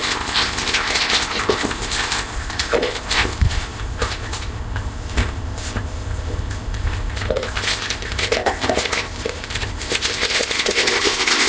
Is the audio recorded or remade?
remade